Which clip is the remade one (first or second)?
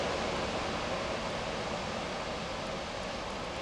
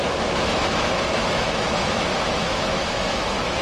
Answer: second